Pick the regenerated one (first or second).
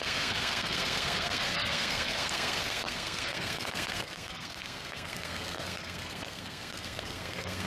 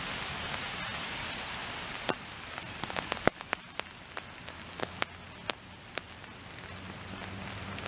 first